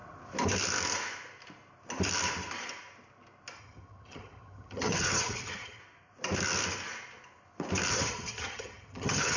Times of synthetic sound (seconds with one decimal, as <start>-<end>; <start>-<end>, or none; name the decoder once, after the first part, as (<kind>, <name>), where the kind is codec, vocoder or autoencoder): 3.6-5.8 (vocoder, HiFi-GAN); 7.9-9.4